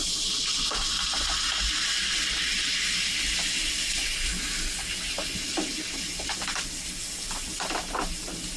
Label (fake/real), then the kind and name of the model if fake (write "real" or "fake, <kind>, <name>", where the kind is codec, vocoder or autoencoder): real